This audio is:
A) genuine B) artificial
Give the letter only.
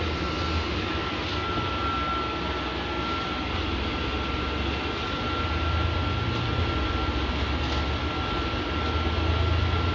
A